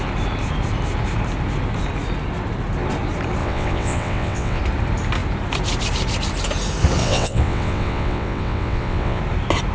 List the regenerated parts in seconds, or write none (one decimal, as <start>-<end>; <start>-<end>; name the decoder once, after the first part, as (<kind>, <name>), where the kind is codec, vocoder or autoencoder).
3.4-4.6 (vocoder, WaveNeXt); 7.0-9.2